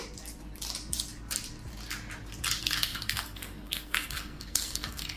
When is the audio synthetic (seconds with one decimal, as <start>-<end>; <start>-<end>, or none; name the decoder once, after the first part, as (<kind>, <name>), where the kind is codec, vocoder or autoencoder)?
2.6-5.2 (codec, SNAC)